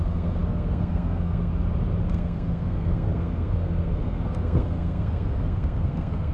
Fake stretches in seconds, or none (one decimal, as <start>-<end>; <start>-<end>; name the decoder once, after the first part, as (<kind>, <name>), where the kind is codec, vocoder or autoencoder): 0.0-1.5 (codec, SNAC); 2.1-6.3